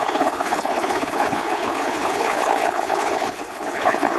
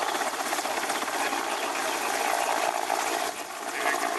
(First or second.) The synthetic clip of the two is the first